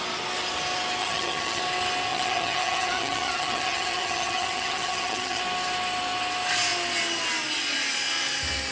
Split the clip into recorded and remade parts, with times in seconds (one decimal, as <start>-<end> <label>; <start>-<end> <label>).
0.0-1.0 recorded; 1.0-1.6 remade; 1.6-2.1 recorded; 2.1-5.4 remade; 5.4-8.7 recorded